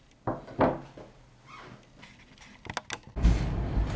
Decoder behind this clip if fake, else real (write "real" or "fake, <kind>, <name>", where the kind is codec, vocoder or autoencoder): real